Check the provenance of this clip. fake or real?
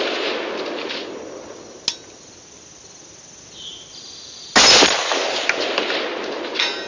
real